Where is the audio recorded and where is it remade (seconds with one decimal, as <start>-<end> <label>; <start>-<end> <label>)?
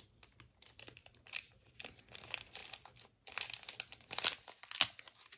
0.0-1.0 recorded; 1.0-1.7 remade; 1.7-5.4 recorded